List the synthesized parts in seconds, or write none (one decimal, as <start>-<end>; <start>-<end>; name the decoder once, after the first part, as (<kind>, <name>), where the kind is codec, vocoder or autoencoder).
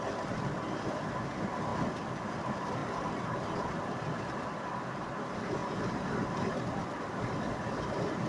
0.0-2.8 (vocoder, BigVGAN v2); 4.0-8.3